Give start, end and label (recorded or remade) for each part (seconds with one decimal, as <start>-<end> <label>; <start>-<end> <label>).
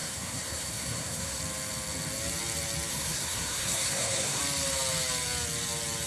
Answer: 0.0-1.4 remade; 1.4-2.9 recorded; 2.9-4.4 remade; 4.4-6.1 recorded